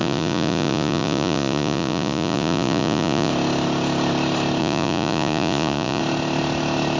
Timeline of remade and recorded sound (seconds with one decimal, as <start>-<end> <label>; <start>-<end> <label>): 0.0-3.3 remade; 3.3-4.6 recorded; 4.6-6.0 remade; 6.0-7.0 recorded